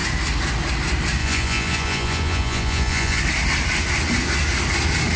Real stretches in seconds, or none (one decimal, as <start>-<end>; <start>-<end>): 0.0-1.2; 3.2-5.2